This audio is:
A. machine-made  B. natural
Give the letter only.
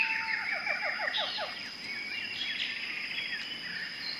B